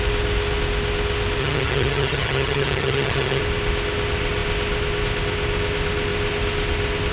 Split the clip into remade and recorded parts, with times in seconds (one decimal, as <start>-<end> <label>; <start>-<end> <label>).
0.0-1.4 recorded; 1.4-3.4 remade; 3.4-7.1 recorded